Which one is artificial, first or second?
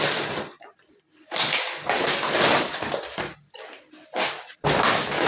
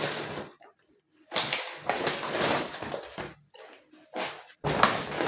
first